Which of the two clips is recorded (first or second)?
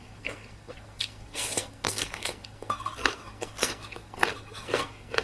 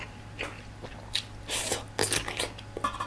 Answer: second